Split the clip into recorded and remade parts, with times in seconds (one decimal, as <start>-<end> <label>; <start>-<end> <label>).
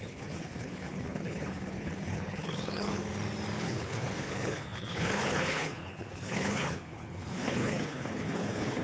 0.0-3.0 remade; 3.0-3.6 recorded; 3.6-8.8 remade